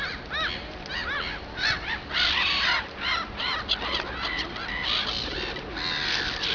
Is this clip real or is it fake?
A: real